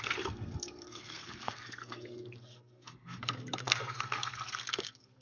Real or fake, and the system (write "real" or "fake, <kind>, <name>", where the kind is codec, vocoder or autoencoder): fake, codec, SNAC